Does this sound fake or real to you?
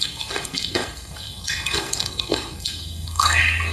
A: fake